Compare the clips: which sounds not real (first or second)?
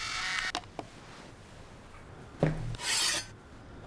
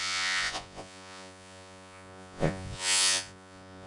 second